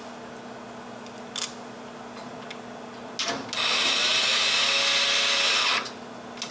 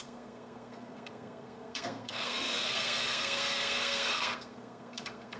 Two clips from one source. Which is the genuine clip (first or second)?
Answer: first